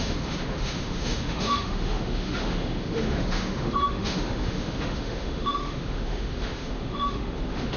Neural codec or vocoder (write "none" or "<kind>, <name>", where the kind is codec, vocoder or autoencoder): autoencoder, DAC-VAE